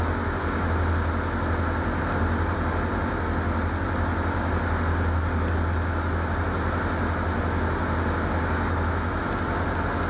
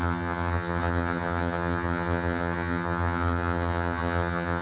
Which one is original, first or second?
first